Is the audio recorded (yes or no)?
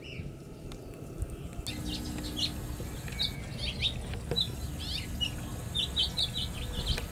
yes